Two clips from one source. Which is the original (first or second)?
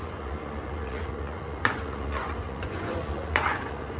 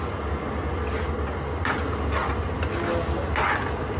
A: second